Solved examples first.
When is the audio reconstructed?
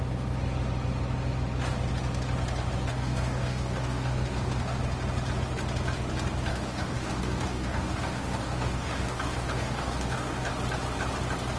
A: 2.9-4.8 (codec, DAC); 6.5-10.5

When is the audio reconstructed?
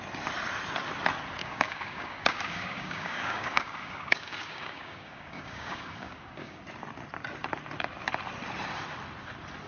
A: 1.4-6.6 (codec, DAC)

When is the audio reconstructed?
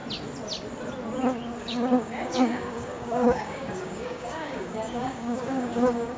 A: 1.6-6.2 (codec, DAC)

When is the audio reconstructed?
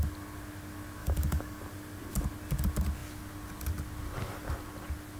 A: 1.0-1.6 (codec, DAC)